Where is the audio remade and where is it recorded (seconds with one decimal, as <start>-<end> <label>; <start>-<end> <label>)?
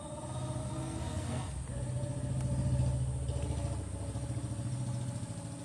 0.0-0.6 recorded; 0.6-1.5 remade; 1.5-5.6 recorded